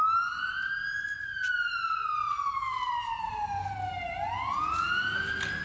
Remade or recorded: recorded